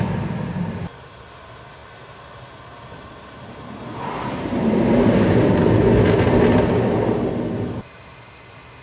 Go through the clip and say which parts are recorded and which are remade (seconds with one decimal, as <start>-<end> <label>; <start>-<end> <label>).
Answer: 0.0-8.8 recorded